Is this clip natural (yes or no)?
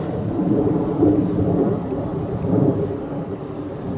no